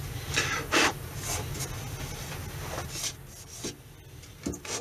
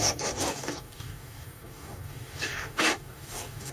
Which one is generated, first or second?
second